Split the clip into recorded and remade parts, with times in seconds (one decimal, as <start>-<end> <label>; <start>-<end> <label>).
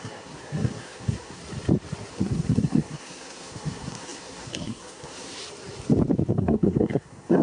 0.0-1.4 remade; 1.4-2.1 recorded; 2.1-5.4 remade; 5.4-6.3 recorded; 6.3-7.4 remade